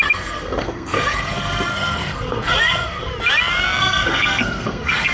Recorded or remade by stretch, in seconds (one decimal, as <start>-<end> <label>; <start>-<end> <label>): 0.0-3.1 remade; 3.1-3.8 recorded; 3.8-5.1 remade